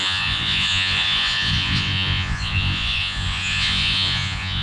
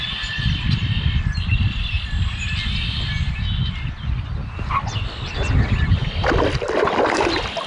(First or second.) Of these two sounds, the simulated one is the first